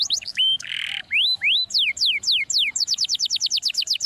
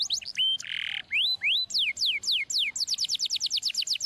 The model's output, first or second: first